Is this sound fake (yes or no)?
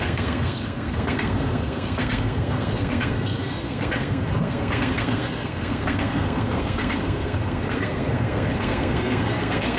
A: yes